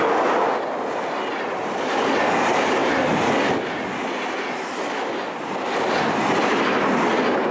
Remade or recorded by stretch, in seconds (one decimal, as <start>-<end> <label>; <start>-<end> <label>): 0.0-7.5 recorded